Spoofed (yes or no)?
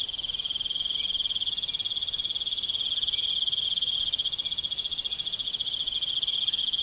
no